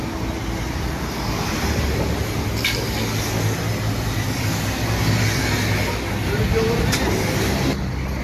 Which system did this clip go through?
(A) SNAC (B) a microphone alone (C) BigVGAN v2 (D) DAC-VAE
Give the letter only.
B